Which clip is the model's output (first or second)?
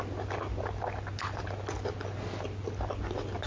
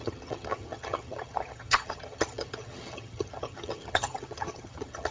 second